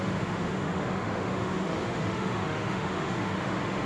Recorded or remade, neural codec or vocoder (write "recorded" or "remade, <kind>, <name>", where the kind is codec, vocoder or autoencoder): remade, autoencoder, DAC-VAE